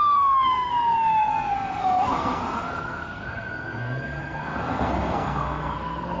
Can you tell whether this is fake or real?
fake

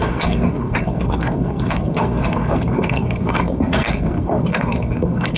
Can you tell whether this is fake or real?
fake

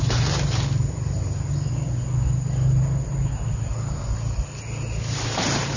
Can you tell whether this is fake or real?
real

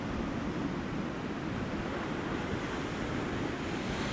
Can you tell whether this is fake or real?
real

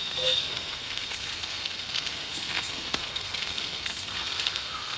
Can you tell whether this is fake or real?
fake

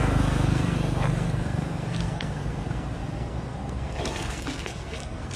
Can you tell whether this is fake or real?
fake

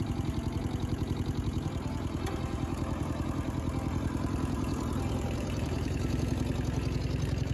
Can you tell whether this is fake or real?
fake